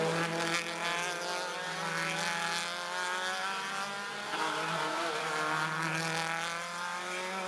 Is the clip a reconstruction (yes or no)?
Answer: no